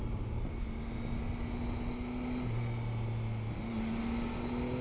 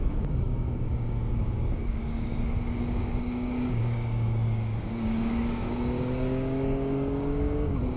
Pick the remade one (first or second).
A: second